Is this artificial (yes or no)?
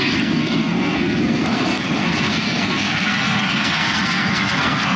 yes